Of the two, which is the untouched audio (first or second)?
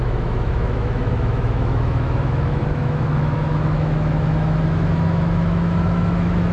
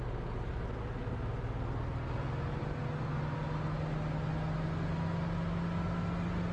second